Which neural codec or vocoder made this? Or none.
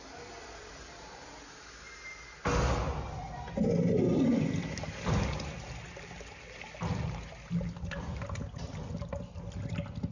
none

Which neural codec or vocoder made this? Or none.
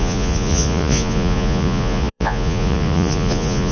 vocoder, Vocos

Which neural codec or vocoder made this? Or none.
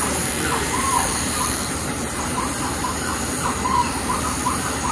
vocoder, BigVGAN v2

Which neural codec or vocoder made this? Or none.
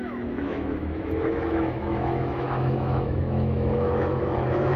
autoencoder, DAC-VAE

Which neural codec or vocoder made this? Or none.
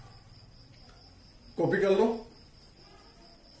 vocoder, BigVGAN v2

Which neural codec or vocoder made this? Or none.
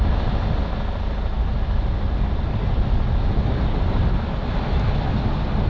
none